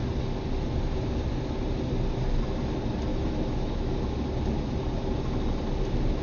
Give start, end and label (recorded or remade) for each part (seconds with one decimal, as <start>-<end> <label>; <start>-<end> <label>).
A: 0.0-3.1 recorded; 3.1-3.9 remade; 3.9-6.2 recorded